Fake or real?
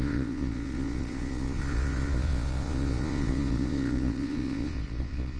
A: fake